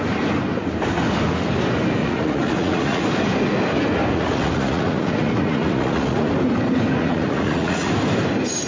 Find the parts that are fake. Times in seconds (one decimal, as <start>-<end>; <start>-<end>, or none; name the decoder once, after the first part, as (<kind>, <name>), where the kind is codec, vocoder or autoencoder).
2.0-3.0 (vocoder, Vocos); 4.1-6.3; 7.0-7.9